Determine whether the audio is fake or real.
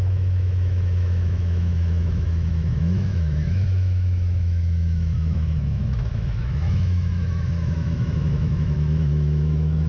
fake